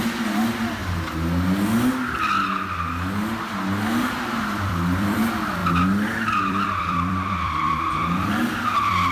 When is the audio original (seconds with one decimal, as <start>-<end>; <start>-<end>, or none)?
0.8-4.2; 5.6-6.5